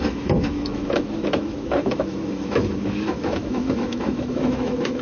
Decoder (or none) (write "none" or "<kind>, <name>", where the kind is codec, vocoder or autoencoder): autoencoder, DAC-VAE